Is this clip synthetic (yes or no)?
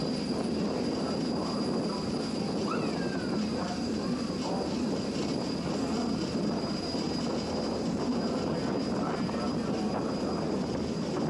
yes